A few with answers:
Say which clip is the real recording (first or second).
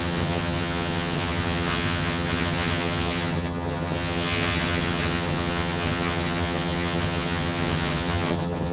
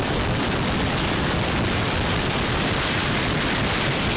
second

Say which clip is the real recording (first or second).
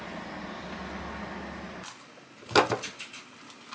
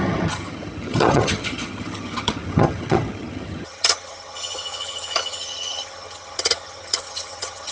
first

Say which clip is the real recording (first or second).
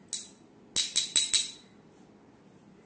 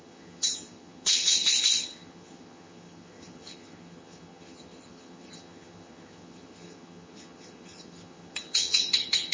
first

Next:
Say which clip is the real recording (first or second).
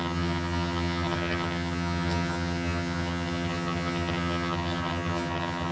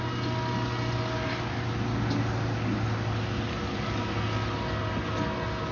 second